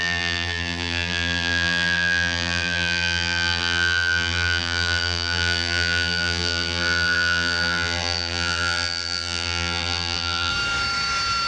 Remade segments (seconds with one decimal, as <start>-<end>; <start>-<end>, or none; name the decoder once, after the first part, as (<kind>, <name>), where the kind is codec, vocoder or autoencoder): 0.0-10.5 (vocoder, BigVGAN v2)